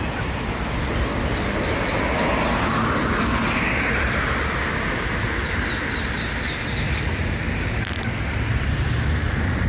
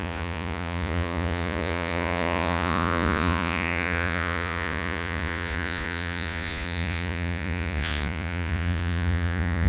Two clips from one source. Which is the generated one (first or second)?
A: second